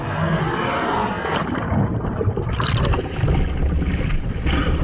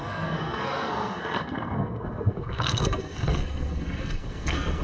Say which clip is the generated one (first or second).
second